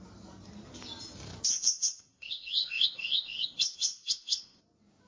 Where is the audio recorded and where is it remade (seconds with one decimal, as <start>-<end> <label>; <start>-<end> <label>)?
0.0-1.5 recorded; 1.5-4.6 remade; 4.6-5.1 recorded